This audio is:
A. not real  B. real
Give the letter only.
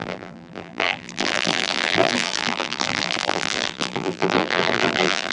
A